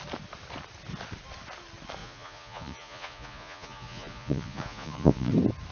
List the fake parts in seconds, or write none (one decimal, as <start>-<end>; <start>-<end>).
2.0-5.3